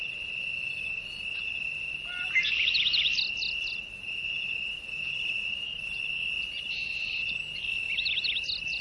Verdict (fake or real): real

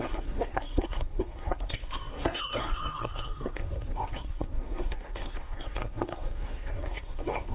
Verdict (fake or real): fake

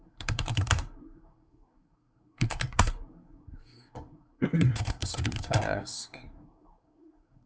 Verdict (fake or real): fake